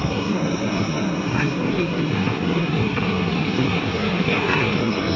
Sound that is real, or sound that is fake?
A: fake